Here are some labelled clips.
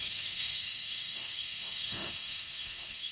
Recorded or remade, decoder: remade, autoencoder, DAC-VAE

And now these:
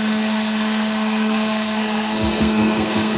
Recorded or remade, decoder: remade, codec, SNAC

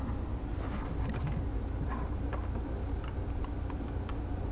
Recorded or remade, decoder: recorded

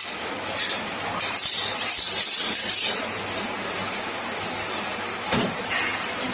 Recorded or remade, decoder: recorded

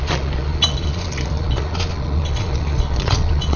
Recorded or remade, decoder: remade, vocoder, Vocos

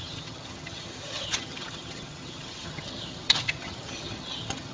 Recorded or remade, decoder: remade, vocoder, HiFi-GAN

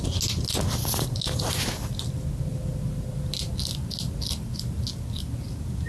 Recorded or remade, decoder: recorded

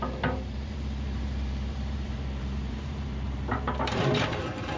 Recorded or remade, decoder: remade, vocoder, BigVGAN v2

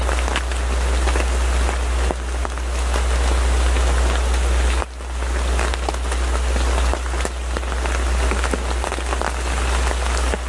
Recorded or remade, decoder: recorded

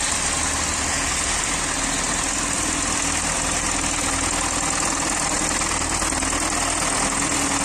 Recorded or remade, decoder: recorded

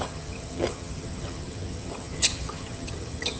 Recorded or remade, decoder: remade, vocoder, HiFi-GAN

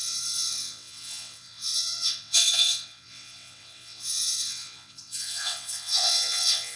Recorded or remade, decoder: remade, vocoder, WaveNeXt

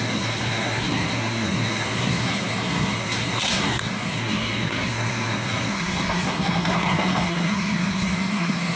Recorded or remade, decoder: remade, codec, SNAC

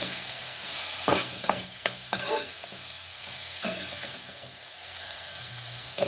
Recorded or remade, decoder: remade, codec, SNAC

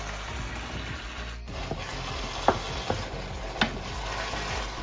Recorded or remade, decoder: recorded